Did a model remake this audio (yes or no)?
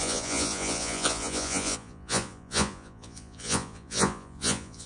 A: yes